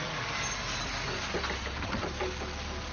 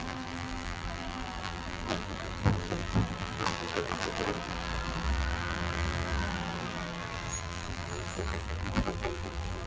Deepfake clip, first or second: second